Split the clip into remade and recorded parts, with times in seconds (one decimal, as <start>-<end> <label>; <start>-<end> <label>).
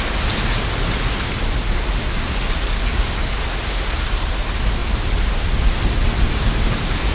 0.0-7.1 recorded